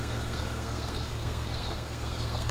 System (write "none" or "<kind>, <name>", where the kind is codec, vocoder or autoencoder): codec, SNAC